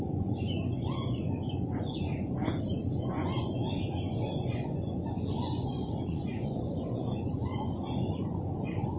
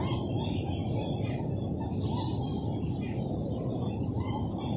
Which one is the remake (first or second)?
first